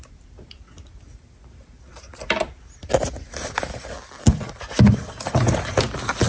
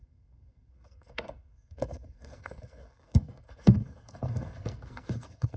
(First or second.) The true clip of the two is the first